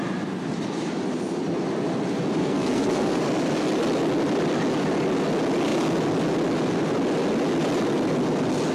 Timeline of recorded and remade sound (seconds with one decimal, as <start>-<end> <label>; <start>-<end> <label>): 0.0-2.4 recorded; 2.4-3.2 remade; 3.2-8.7 recorded